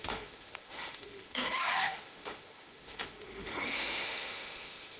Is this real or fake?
fake